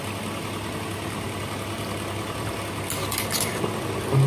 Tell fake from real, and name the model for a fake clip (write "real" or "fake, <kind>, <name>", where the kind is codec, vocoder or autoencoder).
real